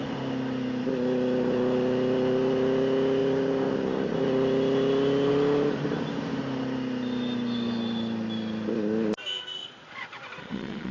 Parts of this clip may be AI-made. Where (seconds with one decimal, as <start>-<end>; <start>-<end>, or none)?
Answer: 9.6-10.9